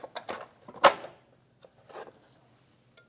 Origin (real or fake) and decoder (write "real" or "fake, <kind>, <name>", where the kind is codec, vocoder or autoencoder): real